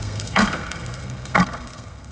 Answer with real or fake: fake